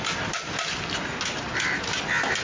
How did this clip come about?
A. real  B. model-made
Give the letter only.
A